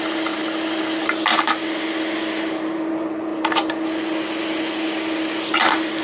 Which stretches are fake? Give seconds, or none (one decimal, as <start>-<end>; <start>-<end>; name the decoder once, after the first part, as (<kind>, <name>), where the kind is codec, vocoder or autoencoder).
none